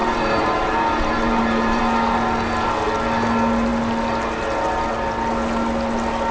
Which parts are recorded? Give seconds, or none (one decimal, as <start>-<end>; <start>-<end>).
1.8-6.3